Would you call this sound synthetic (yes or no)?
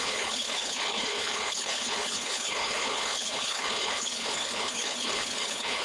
yes